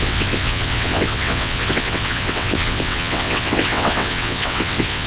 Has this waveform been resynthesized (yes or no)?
yes